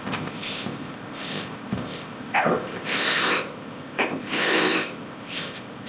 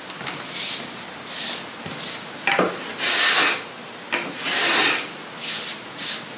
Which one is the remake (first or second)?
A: first